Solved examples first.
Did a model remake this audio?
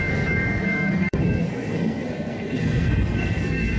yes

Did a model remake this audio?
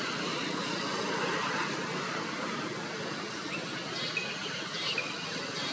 no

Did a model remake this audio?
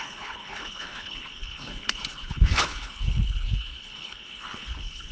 yes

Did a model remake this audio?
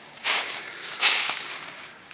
yes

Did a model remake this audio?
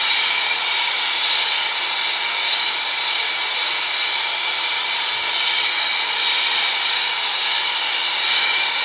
no